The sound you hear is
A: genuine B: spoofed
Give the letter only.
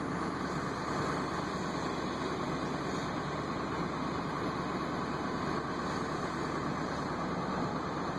A